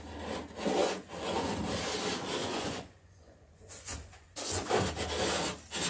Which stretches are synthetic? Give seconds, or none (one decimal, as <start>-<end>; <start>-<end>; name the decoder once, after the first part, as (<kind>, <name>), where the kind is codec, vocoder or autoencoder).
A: 0.8-1.6 (vocoder, Vocos); 2.4-4.7